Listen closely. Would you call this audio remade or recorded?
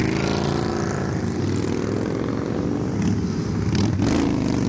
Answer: recorded